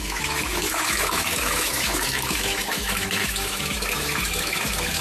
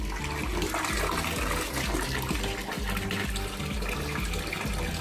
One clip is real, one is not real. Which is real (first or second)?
second